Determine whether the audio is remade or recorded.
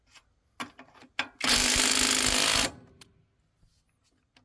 recorded